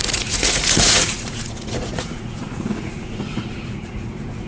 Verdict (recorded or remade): remade